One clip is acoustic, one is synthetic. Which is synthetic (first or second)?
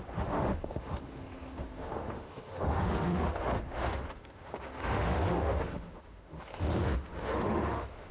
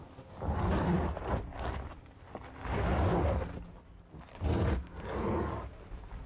first